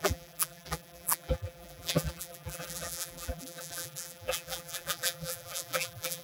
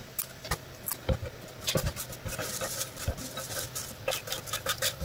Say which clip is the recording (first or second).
second